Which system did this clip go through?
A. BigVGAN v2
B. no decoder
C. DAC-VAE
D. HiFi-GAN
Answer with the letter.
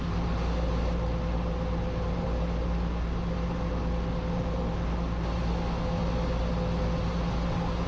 B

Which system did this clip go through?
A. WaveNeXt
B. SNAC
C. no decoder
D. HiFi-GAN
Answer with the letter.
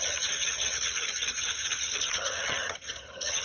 D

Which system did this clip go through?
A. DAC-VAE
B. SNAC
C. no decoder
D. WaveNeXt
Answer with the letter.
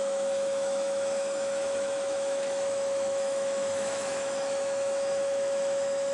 A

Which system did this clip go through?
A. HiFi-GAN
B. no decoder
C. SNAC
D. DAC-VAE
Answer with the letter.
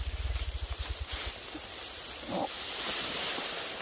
B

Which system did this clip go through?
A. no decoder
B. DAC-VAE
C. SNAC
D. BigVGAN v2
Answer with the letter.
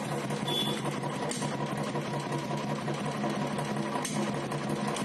A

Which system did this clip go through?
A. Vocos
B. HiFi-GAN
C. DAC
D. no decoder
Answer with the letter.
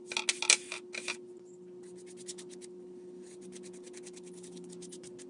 D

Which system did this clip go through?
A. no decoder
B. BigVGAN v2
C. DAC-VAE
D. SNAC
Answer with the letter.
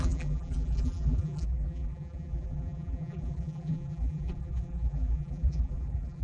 B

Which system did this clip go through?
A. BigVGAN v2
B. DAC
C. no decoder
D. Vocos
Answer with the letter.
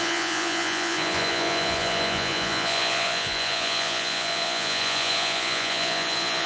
D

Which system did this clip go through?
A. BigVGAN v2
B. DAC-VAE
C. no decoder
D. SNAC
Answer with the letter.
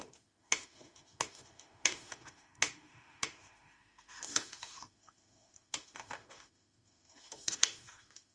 B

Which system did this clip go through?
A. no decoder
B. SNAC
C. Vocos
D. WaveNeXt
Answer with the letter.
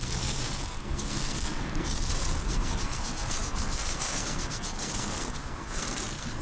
B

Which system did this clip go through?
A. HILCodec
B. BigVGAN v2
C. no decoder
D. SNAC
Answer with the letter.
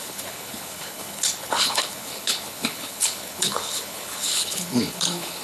A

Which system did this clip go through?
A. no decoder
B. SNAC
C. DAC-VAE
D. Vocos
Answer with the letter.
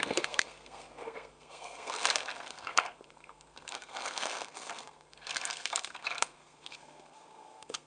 B